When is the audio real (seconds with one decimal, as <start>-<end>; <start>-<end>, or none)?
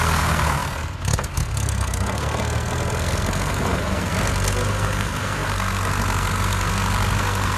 none